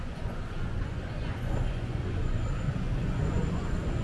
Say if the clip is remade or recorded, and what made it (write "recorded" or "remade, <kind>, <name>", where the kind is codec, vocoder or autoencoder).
remade, vocoder, Vocos